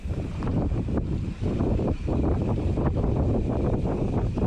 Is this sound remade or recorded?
remade